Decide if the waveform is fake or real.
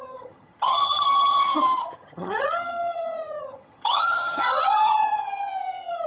fake